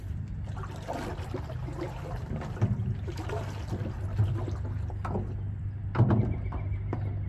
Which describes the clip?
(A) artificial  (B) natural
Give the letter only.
B